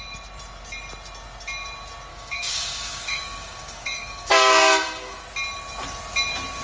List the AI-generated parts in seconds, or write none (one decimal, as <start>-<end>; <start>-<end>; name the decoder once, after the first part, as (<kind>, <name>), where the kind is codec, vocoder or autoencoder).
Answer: 2.1-5.2 (codec, DAC)